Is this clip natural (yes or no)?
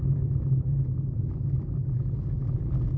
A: yes